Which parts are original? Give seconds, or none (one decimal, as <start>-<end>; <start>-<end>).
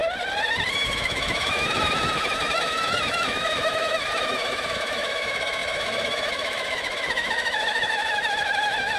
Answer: 0.0-0.7